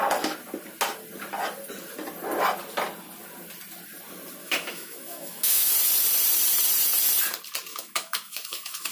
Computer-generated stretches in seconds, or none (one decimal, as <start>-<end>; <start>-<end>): 4.4-5.7; 7.7-8.9